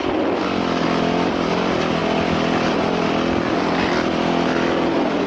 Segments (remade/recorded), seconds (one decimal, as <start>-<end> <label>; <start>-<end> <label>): 0.0-5.3 recorded